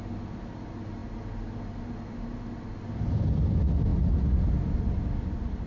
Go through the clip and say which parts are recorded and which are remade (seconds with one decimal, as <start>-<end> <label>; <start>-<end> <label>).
0.0-5.7 recorded